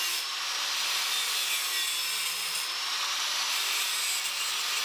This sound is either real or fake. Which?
real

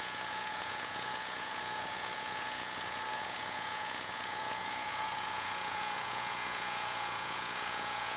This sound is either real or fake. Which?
fake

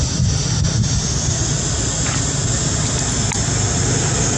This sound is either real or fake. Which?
real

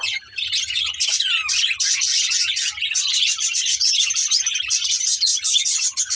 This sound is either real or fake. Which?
real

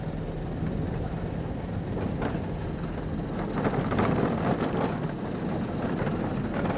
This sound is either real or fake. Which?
real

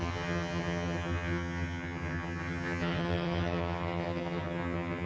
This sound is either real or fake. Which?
fake